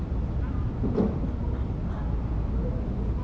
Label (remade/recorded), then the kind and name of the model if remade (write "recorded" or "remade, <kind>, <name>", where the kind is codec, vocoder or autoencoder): recorded